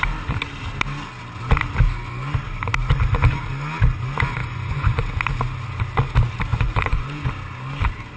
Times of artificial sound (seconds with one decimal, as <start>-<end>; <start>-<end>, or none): 4.4-5.0; 6.5-7.3